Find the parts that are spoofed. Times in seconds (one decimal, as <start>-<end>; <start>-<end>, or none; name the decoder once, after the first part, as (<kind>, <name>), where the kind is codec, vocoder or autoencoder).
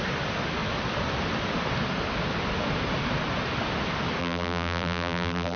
4.2-5.6 (vocoder, BigVGAN v2)